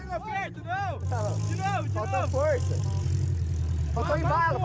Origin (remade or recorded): remade